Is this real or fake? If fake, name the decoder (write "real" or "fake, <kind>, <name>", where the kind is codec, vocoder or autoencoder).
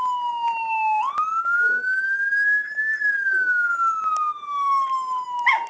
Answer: real